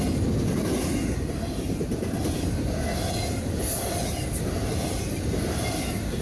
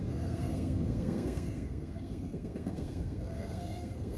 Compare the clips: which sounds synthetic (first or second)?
second